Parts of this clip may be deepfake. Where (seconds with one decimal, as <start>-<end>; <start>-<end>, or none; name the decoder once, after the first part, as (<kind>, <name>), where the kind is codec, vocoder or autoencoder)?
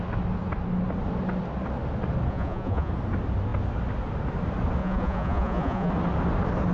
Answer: 2.3-2.9 (vocoder, Vocos); 4.8-5.9